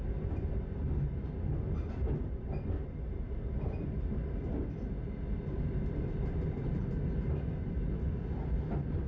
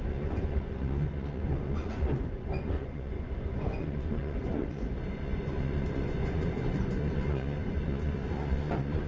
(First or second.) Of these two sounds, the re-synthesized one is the second